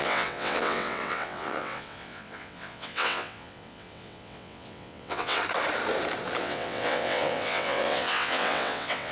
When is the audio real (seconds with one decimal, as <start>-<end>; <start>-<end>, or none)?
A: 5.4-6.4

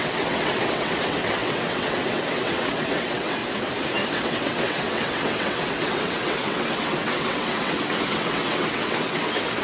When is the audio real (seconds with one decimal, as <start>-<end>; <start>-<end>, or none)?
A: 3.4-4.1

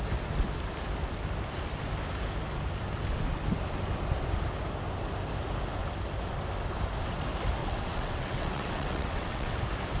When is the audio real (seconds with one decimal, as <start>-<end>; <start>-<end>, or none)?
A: 0.0-7.6; 9.6-10.0

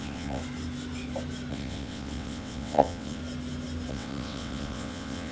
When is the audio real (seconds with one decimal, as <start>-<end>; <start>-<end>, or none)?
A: 0.4-1.5; 3.2-3.9

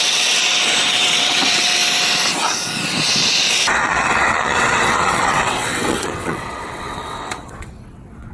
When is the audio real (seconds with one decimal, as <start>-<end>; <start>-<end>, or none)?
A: 0.4-1.0; 1.8-3.5

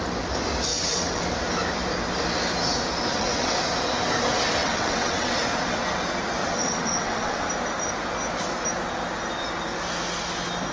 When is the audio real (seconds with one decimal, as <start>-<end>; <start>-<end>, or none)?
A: 0.0-0.7; 1.2-3.1; 3.6-4.6; 5.3-6.4; 7.5-10.7